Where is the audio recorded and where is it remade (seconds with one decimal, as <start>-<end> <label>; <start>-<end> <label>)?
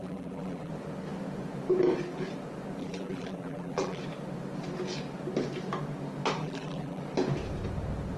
0.0-0.7 remade; 0.7-2.8 recorded; 2.8-4.0 remade; 4.0-6.4 recorded; 6.4-7.0 remade; 7.0-8.2 recorded